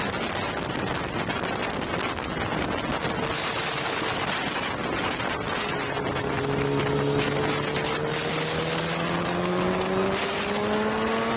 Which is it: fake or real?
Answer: real